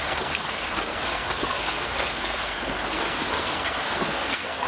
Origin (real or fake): fake